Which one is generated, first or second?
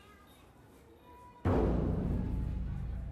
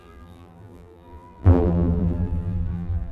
second